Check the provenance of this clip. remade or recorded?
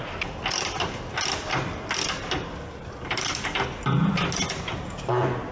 recorded